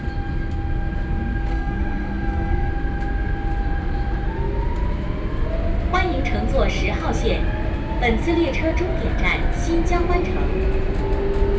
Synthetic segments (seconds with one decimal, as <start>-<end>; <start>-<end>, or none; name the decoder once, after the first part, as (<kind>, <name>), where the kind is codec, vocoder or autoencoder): 1.5-2.7 (codec, SNAC)